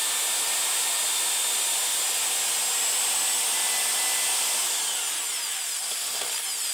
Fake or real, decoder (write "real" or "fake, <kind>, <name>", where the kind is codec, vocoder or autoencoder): real